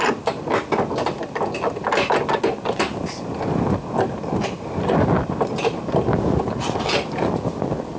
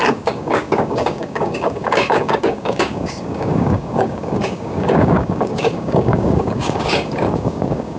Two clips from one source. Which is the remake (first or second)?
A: second